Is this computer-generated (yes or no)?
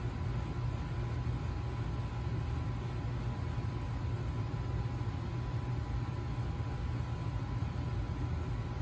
no